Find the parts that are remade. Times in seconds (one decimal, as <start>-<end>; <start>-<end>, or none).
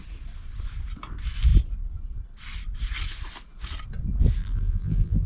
4.4-5.3